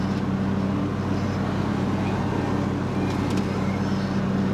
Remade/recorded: recorded